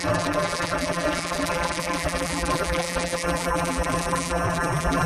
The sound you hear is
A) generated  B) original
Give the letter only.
A